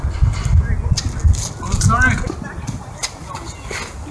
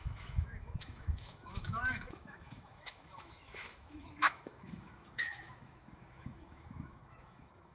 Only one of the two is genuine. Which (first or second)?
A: first